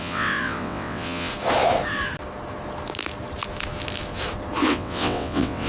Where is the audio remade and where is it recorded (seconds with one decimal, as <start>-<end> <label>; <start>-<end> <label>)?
0.0-1.3 remade; 1.3-4.7 recorded; 4.7-5.7 remade

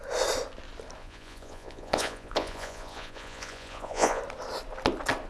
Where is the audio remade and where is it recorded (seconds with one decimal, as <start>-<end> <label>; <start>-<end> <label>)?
0.0-1.0 recorded; 1.0-4.2 remade; 4.2-5.3 recorded

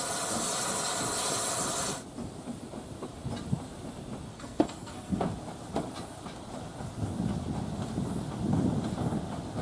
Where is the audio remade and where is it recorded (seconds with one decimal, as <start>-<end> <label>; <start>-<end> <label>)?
0.0-4.3 recorded; 4.3-5.2 remade; 5.2-9.6 recorded

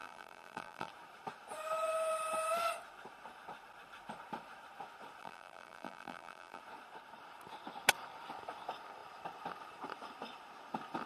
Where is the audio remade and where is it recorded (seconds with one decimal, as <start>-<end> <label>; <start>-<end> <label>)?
0.0-0.9 remade; 0.9-5.2 recorded; 5.2-6.6 remade; 6.6-11.1 recorded

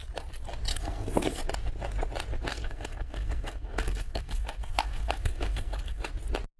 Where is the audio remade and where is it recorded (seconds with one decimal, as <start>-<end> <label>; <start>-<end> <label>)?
0.0-0.7 recorded; 0.7-1.4 remade; 1.4-2.5 recorded; 2.5-6.1 remade; 6.1-6.6 recorded

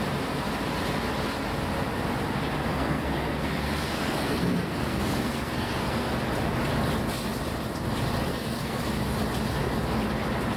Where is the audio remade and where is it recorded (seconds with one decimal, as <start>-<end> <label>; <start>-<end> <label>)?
0.0-2.7 recorded; 2.7-6.1 remade; 6.1-8.3 recorded; 8.3-8.8 remade; 8.8-10.6 recorded